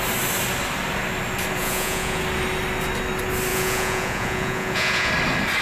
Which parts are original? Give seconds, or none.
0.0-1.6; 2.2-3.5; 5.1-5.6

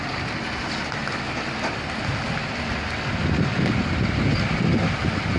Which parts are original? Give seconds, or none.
0.0-2.4; 4.3-5.4

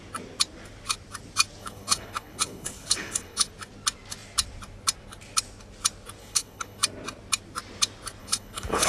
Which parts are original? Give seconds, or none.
0.0-1.6; 3.5-6.2; 6.8-8.2

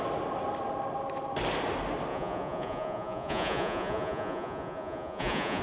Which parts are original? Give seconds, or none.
0.0-2.1

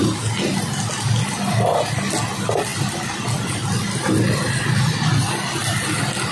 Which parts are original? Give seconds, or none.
0.0-6.3